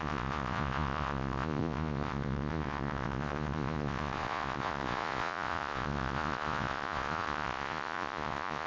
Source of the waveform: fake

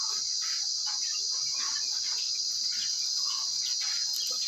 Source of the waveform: real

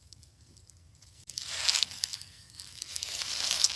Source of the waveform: fake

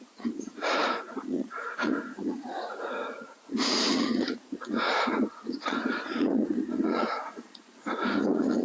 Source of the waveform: fake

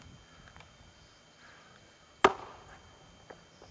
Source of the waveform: real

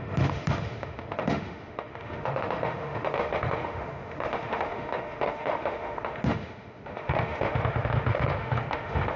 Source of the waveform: fake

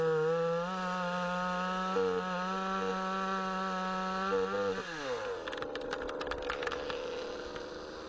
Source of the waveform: real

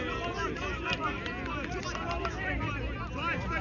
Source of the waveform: real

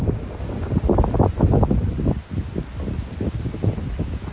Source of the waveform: real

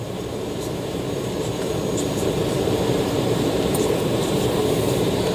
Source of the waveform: fake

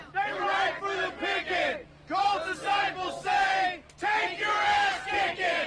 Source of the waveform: real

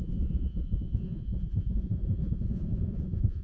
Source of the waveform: fake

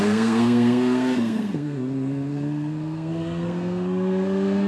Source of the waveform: fake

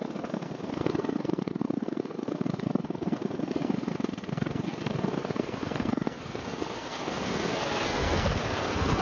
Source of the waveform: fake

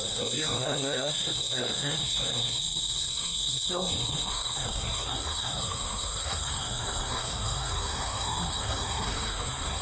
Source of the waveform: fake